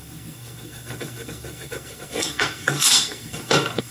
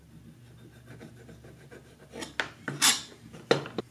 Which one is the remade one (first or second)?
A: first